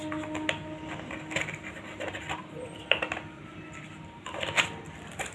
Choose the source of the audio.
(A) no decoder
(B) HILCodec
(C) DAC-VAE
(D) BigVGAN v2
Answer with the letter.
A